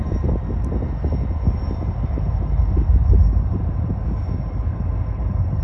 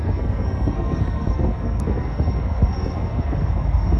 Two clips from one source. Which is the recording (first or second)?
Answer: first